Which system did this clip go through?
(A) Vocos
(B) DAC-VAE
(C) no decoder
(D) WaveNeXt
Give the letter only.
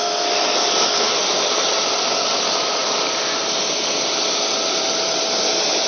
C